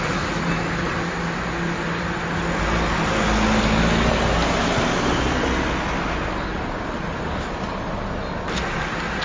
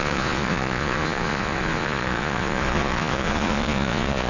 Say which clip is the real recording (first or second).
first